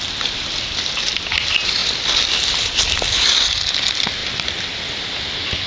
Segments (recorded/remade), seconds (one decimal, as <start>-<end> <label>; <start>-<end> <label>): 0.0-5.7 recorded

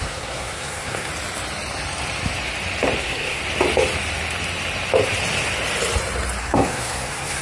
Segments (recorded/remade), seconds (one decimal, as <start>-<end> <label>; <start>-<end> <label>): 0.0-1.1 remade; 1.1-3.0 recorded; 3.0-3.4 remade; 3.4-6.4 recorded; 6.4-7.4 remade

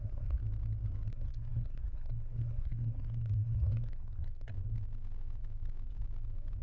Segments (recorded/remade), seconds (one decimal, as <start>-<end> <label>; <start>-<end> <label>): 0.0-0.4 remade; 0.4-1.1 recorded; 1.1-4.5 remade; 4.5-6.6 recorded